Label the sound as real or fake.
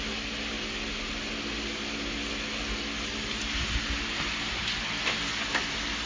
real